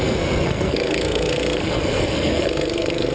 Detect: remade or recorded remade